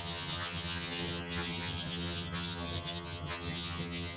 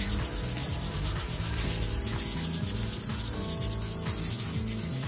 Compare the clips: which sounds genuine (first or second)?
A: second